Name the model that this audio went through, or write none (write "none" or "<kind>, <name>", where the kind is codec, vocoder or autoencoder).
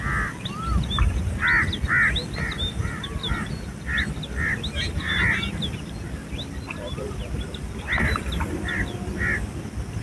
none